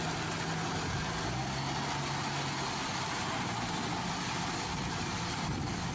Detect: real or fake real